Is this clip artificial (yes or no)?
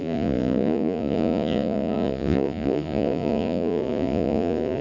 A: yes